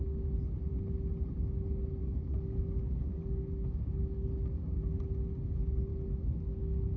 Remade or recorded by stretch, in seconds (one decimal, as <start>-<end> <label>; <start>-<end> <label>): 0.0-2.0 recorded; 2.0-5.0 remade; 5.0-5.9 recorded; 5.9-7.0 remade